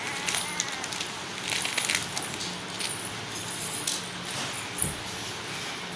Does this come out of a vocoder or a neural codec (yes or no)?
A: no